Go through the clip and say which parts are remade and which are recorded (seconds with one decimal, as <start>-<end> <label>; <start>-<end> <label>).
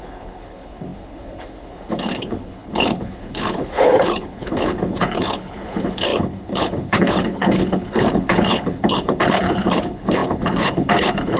0.0-11.4 remade